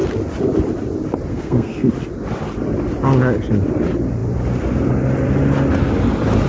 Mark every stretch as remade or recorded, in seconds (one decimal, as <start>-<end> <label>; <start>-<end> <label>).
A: 0.0-1.3 recorded; 1.3-1.9 remade; 1.9-6.5 recorded